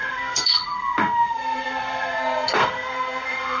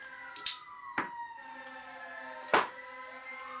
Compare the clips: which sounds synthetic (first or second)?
first